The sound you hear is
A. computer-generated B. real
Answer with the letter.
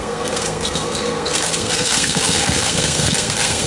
A